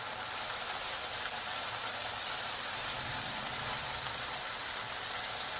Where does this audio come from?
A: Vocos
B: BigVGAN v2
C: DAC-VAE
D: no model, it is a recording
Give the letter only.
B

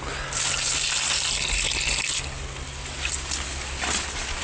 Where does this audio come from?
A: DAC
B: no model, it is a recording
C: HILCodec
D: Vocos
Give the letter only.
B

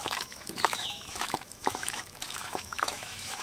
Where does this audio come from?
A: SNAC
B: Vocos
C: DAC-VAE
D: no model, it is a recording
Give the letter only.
C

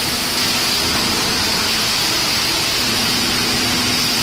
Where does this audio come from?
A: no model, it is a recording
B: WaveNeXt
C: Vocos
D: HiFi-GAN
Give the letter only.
A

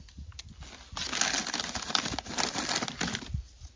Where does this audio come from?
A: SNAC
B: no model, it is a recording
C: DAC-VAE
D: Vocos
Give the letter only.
B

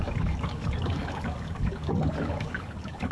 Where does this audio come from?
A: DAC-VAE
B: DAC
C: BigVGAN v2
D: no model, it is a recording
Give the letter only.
B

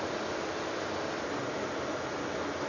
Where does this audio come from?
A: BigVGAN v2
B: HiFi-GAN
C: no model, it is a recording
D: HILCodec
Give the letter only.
C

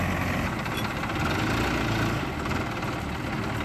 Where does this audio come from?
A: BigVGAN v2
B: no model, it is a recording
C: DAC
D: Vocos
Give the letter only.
B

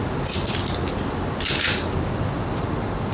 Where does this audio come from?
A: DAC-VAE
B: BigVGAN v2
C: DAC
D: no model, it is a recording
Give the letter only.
D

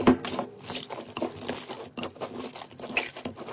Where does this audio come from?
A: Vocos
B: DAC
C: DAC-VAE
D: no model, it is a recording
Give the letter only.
D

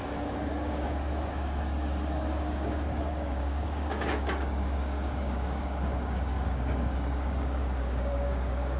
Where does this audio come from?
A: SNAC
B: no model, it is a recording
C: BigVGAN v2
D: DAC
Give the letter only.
D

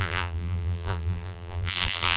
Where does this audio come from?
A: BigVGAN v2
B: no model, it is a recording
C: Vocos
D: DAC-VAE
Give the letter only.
A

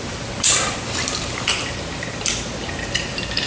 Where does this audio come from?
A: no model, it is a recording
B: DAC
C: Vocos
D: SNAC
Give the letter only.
A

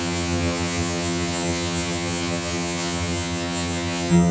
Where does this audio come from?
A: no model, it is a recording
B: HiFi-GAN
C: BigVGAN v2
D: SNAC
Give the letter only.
B